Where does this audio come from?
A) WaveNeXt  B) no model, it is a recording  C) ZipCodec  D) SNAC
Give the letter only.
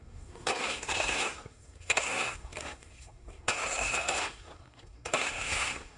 D